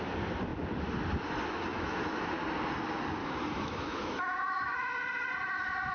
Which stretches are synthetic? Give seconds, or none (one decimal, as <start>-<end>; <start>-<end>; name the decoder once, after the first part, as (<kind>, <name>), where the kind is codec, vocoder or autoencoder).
1.7-2.3 (autoencoder, DAC-VAE); 3.2-4.6